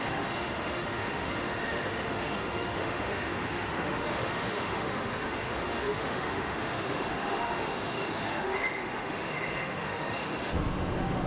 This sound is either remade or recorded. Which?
remade